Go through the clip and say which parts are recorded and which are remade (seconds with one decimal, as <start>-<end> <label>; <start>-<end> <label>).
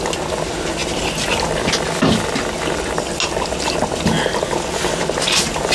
0.0-5.7 recorded